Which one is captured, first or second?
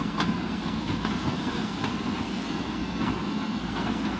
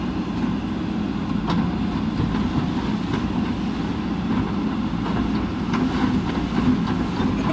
second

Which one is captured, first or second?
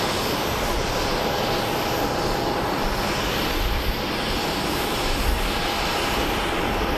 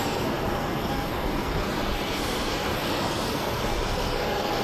first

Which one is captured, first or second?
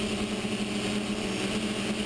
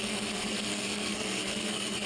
first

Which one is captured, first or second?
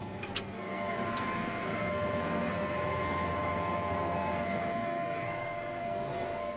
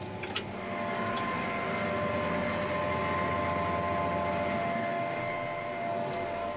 second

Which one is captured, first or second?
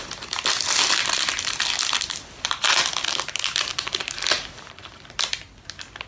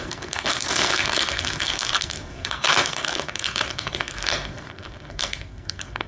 first